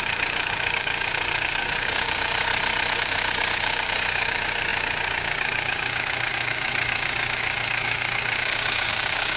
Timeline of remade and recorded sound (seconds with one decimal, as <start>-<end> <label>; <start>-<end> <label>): 0.0-2.5 remade; 2.5-3.0 recorded; 3.0-9.4 remade